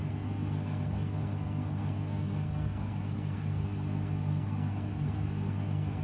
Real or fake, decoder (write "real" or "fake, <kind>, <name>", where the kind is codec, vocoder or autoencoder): fake, codec, SNAC